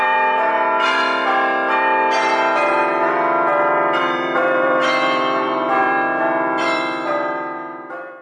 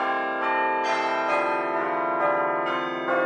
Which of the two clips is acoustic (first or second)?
second